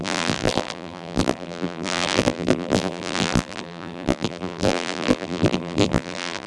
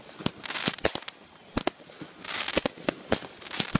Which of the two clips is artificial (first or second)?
first